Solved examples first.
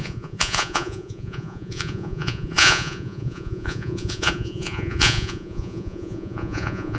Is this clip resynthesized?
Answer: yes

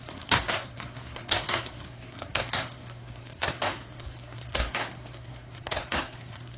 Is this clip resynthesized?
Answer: yes